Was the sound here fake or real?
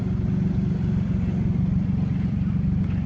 real